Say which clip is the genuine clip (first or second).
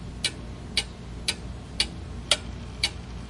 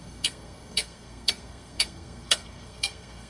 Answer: first